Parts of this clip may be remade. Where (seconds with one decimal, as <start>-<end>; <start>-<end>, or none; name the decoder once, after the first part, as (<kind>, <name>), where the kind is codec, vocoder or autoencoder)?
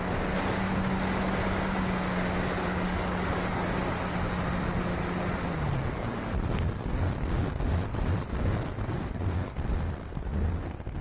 2.7-3.8 (codec, DAC)